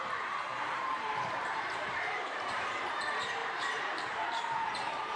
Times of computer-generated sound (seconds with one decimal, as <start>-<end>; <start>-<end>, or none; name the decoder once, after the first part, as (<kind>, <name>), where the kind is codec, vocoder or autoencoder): 0.5-2.8 (vocoder, BigVGAN v2); 3.4-5.2